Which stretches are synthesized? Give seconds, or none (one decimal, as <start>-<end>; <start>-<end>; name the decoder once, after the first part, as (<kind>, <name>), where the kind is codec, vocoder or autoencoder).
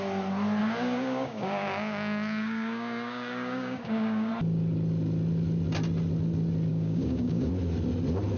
0.6-4.3 (codec, DAC); 6.7-7.5